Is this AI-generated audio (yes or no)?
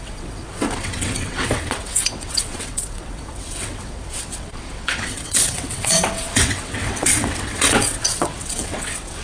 yes